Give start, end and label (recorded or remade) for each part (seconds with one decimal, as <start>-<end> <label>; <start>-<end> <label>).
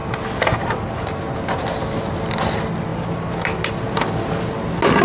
0.0-2.9 recorded; 2.9-3.7 remade; 3.7-5.0 recorded